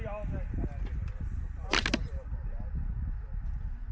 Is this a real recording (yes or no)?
yes